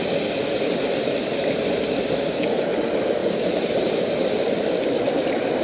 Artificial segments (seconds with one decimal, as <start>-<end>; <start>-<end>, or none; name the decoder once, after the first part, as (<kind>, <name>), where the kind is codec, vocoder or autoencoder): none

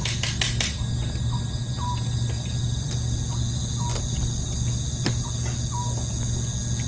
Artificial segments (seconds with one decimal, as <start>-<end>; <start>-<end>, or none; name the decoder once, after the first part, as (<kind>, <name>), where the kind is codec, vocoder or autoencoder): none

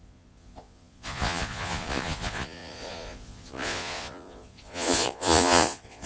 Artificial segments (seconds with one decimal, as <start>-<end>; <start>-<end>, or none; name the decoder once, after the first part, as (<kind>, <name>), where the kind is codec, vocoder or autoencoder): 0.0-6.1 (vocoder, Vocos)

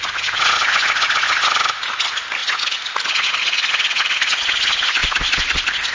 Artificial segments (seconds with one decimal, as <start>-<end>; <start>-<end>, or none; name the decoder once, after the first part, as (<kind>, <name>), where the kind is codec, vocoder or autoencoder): none